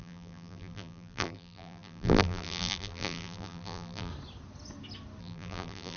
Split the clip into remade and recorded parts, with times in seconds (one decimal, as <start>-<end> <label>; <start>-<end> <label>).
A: 0.0-4.1 remade; 4.1-5.2 recorded; 5.2-6.0 remade